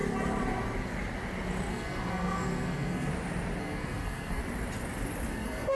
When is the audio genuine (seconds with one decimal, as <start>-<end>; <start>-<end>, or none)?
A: 0.0-1.7; 3.1-3.6; 4.4-5.3